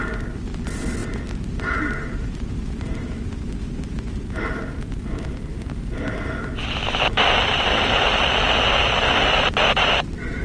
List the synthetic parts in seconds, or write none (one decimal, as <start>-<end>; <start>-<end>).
1.0-5.0; 5.5-7.0